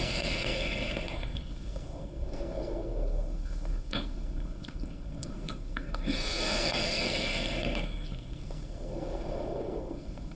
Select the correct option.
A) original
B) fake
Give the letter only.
B